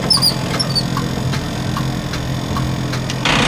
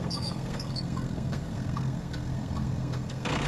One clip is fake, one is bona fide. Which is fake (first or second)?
second